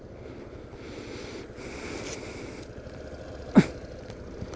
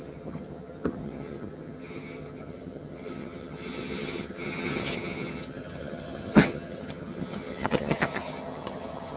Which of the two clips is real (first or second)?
first